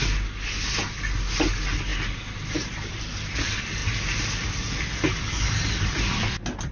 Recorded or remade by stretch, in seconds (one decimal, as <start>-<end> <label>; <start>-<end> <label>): 0.0-1.9 recorded; 1.9-3.2 remade; 3.2-6.7 recorded